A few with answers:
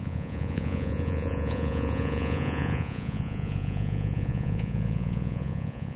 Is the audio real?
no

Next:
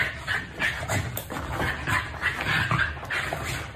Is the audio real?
yes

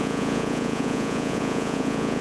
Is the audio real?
no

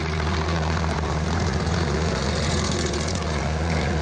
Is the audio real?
no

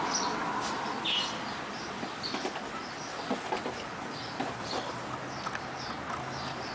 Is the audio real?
yes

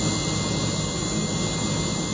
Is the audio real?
yes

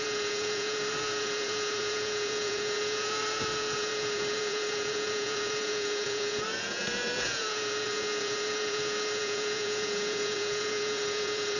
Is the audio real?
no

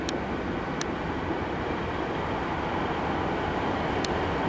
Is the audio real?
yes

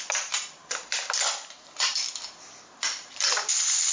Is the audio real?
yes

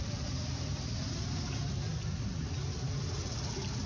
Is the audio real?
yes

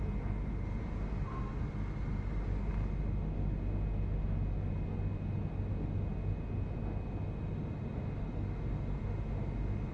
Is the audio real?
yes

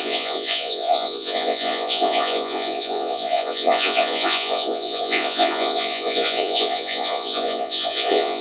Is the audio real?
no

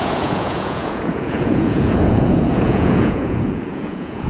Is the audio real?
no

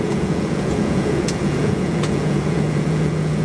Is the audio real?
no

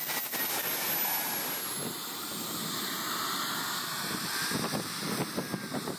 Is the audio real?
yes